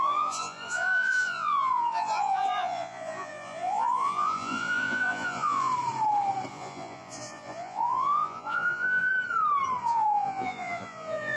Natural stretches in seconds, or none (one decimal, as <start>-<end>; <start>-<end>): 5.7-6.5; 9.1-9.8